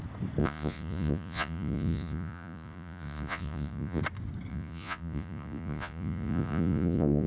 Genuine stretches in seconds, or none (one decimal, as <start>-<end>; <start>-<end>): 0.0-0.4; 4.0-4.5